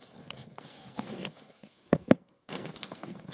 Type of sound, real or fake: fake